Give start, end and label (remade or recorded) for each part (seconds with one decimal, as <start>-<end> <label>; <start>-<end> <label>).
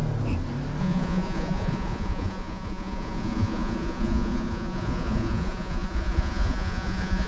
0.0-0.8 recorded; 0.8-7.3 remade